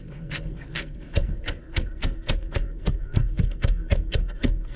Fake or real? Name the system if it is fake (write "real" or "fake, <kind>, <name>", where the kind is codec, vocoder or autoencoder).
fake, codec, SNAC